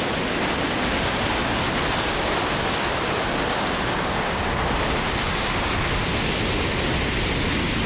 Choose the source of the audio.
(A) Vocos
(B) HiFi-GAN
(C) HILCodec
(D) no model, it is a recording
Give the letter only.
D